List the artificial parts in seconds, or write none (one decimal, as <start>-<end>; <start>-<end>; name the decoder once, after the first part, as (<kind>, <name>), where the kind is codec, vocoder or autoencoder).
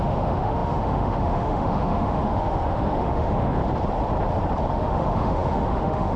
0.0-3.6 (autoencoder, DAC-VAE); 4.7-6.2